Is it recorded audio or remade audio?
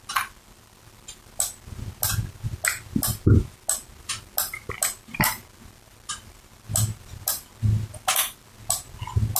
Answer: recorded